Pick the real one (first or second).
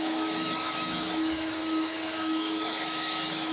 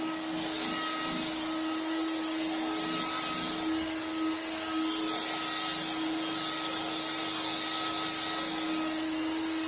second